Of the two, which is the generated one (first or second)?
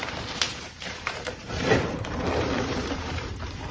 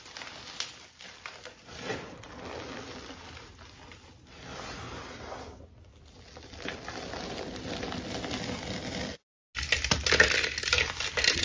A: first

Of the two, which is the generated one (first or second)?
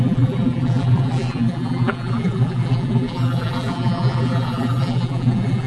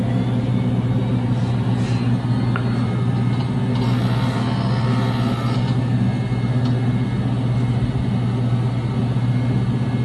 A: first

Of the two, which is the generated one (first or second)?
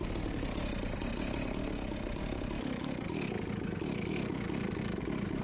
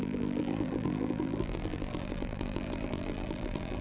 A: second